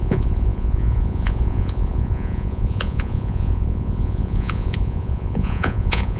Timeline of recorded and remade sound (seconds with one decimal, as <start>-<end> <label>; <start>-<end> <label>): 0.0-6.2 remade